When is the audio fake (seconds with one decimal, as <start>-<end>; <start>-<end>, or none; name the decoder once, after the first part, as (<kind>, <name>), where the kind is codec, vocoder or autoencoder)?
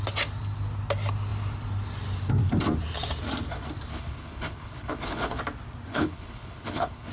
3.9-5.4 (codec, HILCodec); 5.9-7.1